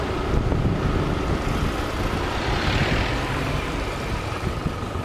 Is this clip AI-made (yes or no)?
no